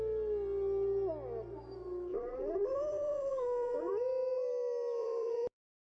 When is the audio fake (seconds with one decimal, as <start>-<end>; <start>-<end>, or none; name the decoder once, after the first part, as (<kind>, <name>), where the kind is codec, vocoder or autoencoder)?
2.1-3.9 (vocoder, BigVGAN v2); 5.0-6.0